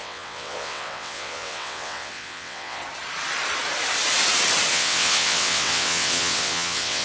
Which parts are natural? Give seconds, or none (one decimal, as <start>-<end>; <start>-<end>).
2.8-4.7